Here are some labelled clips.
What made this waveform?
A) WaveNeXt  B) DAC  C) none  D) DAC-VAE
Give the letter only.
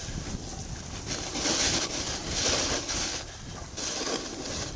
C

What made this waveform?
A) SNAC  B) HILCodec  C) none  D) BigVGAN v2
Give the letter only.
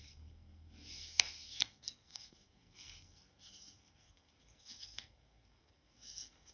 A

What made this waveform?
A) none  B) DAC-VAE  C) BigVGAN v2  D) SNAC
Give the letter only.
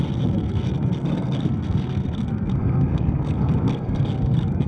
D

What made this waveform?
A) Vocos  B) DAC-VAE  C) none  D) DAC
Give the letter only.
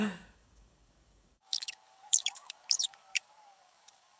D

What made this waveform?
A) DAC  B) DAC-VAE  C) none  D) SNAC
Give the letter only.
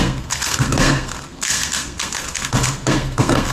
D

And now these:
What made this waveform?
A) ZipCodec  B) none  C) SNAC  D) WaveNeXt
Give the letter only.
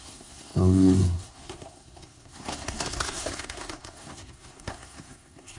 C